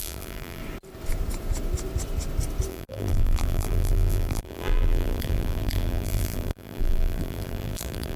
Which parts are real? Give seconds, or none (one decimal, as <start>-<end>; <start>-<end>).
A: 0.6-2.7